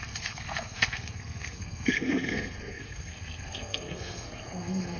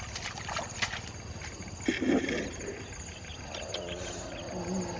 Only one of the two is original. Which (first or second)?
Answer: second